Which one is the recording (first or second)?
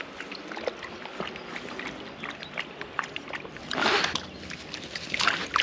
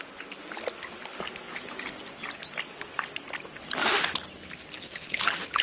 second